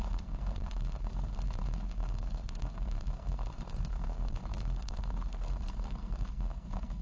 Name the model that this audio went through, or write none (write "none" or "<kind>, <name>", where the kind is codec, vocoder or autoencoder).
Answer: codec, SNAC